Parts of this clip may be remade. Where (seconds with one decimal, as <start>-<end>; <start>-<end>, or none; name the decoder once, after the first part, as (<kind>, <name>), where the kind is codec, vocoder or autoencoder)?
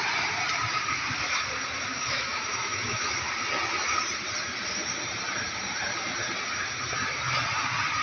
1.9-3.1 (autoencoder, DAC-VAE)